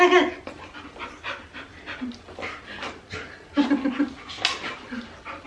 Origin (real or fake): real